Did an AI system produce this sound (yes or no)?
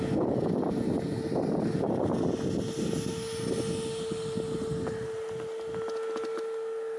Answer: no